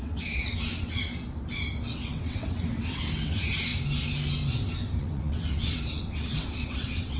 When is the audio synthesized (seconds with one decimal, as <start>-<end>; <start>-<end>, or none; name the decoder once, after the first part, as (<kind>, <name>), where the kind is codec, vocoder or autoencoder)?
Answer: 0.0-1.1 (vocoder, WaveNeXt); 1.9-3.7; 5.0-7.2